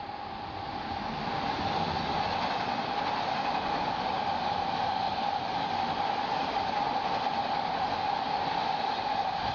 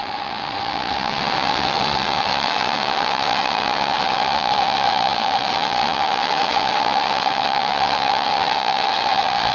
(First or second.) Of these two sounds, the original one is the first